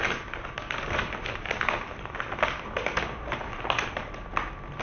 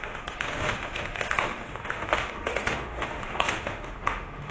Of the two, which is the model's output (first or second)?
second